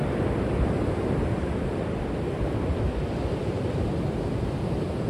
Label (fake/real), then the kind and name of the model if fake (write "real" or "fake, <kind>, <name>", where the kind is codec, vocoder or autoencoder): real